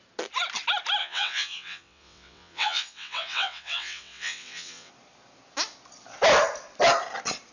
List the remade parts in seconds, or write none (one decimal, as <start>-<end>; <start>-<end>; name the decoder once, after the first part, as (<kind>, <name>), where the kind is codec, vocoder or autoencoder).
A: 1.0-4.9 (vocoder, WaveNeXt)